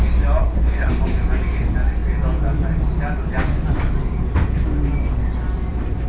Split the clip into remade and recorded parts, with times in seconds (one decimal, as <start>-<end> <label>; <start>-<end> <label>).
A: 0.0-0.4 recorded; 0.4-0.9 remade; 0.9-6.1 recorded